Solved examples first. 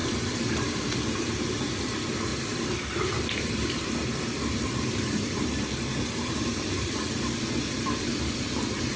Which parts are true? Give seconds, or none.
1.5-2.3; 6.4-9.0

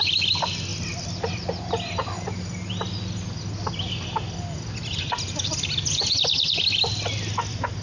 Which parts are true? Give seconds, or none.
0.0-7.8

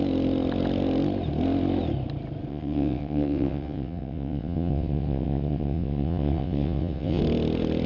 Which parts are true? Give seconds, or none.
0.0-2.5; 7.2-7.9

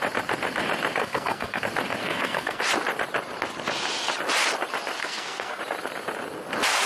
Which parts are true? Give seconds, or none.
0.0-1.0; 1.6-2.0; 2.6-5.0; 5.6-6.9

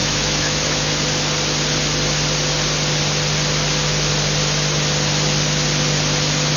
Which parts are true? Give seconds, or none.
0.9-6.6

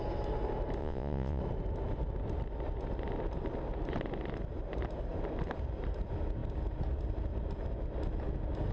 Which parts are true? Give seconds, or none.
0.0-0.8; 1.4-8.7

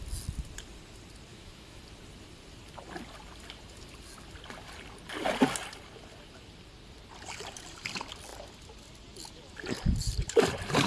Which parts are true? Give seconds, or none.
0.0-1.3; 1.8-10.9